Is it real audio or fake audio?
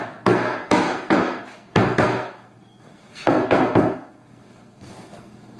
fake